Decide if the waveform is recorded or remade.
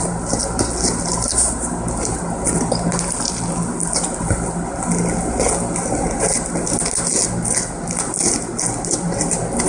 recorded